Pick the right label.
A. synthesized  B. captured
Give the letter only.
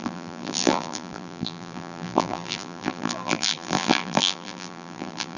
A